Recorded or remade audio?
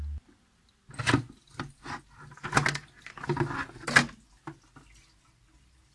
recorded